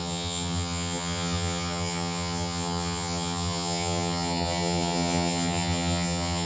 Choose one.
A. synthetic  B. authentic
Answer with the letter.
A